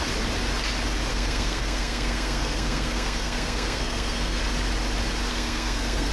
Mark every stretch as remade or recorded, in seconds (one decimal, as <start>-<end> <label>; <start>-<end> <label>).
0.0-1.1 recorded; 1.1-4.4 remade; 4.4-5.3 recorded; 5.3-6.1 remade